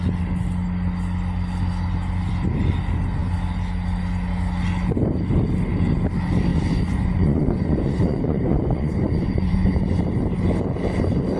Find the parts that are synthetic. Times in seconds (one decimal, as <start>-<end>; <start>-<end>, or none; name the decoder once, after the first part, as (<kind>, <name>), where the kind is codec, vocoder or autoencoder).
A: 6.5-10.0 (vocoder, Vocos)